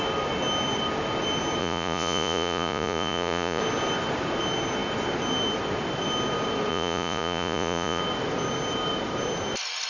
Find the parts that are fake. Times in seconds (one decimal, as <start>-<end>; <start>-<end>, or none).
1.6-3.6; 6.7-8.0